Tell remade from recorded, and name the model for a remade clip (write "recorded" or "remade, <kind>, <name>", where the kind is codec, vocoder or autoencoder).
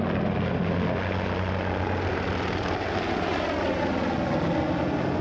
recorded